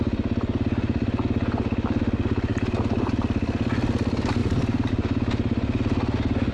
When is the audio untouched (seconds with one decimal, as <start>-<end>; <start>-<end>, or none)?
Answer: 0.0-2.5; 3.1-4.4; 4.9-6.5